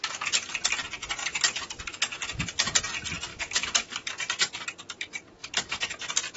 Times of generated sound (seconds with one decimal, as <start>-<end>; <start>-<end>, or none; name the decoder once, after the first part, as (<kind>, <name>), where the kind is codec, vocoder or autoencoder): 3.3-3.9 (autoencoder, DAC-VAE)